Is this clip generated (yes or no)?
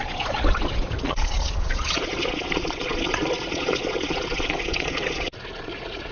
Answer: yes